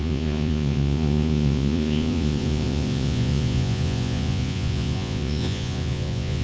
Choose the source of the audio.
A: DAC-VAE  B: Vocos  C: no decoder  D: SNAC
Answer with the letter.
B